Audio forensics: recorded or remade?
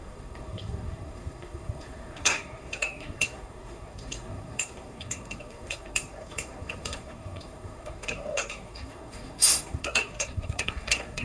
remade